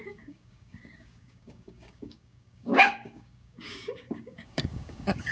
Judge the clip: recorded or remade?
remade